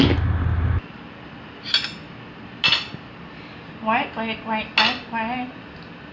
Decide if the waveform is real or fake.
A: real